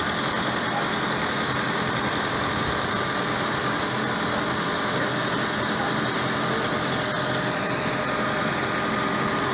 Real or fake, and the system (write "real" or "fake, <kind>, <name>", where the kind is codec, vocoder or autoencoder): real